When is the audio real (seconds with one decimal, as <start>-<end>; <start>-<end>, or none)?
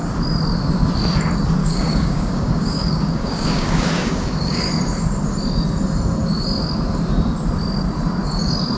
0.0-1.6; 4.7-8.8